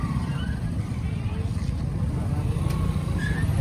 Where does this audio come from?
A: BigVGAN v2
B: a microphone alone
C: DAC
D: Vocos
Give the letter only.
B